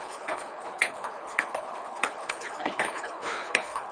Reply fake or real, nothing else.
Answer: fake